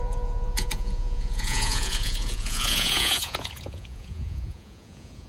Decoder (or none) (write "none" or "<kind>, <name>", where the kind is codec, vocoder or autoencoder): vocoder, Vocos